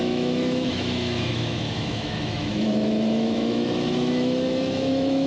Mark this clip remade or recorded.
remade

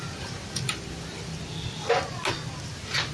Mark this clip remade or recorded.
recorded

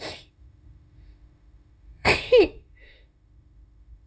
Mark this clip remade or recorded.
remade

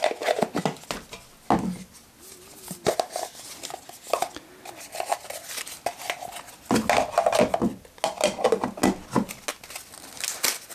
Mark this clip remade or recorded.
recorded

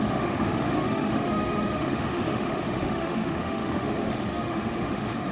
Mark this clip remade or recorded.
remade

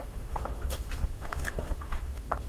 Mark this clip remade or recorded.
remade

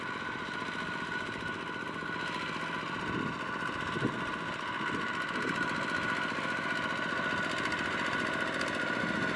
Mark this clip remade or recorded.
recorded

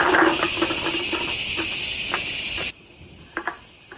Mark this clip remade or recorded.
recorded